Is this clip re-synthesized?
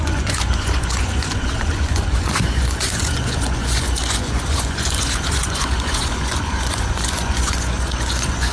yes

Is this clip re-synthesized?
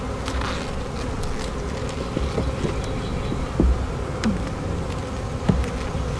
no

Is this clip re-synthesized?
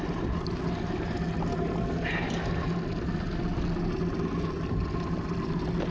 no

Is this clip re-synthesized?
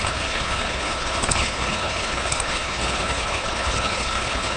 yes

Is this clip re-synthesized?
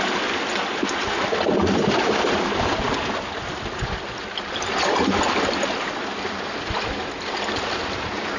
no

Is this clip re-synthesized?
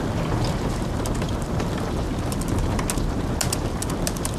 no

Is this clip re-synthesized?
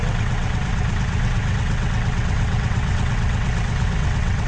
yes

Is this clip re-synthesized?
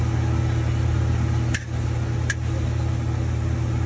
no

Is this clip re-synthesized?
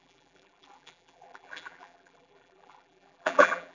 yes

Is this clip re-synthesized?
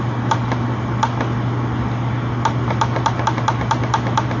no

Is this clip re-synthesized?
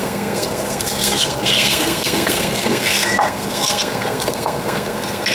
yes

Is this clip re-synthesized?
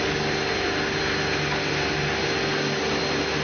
no